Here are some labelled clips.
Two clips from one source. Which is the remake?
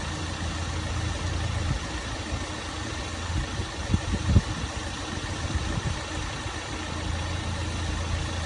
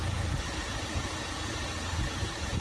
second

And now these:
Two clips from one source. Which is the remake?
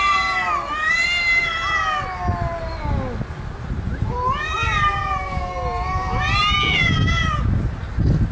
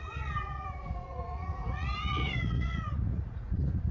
second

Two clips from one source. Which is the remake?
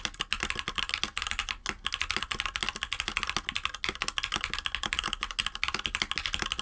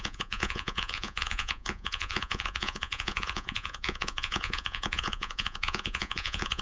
second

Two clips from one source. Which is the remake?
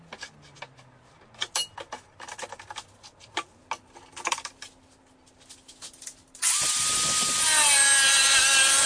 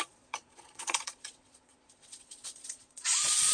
second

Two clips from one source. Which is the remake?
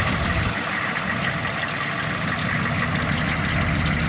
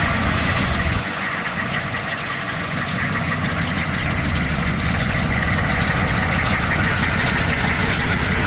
second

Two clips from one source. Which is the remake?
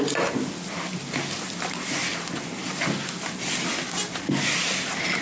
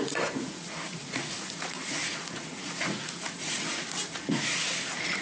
second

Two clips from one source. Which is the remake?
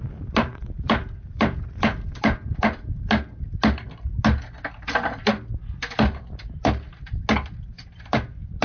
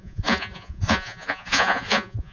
second